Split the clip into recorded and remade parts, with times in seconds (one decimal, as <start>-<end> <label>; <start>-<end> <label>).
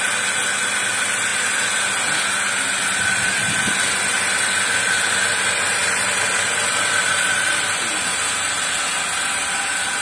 0.0-10.0 recorded